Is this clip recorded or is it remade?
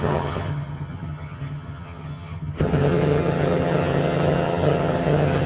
remade